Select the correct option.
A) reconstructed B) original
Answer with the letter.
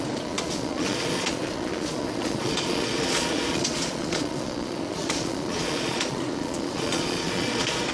A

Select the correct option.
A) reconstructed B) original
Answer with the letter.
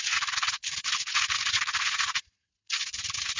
B